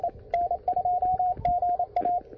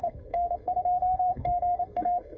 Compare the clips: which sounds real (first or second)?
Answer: first